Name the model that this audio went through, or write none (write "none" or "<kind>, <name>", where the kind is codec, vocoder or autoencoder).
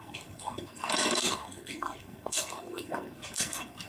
codec, SNAC